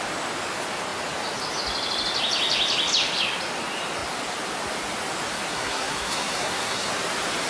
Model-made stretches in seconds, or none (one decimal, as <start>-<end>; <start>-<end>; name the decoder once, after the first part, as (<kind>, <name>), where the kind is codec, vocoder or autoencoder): 5.5-6.9 (codec, SNAC)